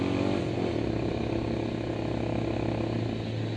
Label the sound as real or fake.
real